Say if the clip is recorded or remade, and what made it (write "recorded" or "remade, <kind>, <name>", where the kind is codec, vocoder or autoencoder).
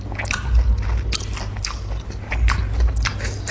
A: recorded